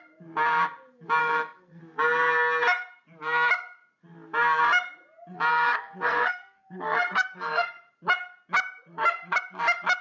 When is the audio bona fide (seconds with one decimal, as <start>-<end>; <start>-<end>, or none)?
0.0-1.2; 1.8-5.5; 7.6-10.0

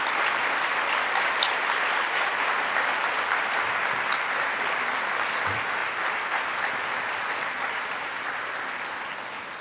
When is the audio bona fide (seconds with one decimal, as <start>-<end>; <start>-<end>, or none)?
0.0-9.6

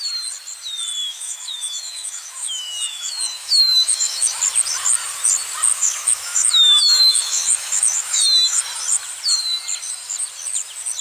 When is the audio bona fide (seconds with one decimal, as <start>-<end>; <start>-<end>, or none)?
0.0-1.0; 4.4-5.7; 8.6-11.0

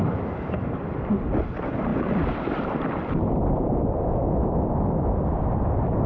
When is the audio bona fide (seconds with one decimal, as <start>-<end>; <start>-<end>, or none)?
0.0-1.9; 5.6-6.1

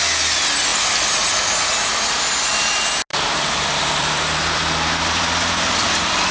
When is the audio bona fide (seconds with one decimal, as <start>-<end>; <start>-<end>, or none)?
0.0-3.1